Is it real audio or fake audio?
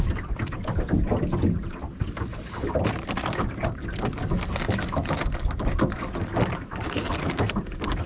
real